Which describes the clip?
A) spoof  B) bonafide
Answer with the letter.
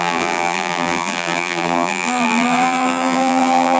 A